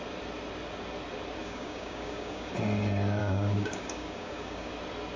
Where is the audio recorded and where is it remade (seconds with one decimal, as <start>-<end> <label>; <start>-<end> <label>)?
0.0-1.4 recorded; 1.4-2.5 remade; 2.5-3.2 recorded; 3.2-4.7 remade; 4.7-5.2 recorded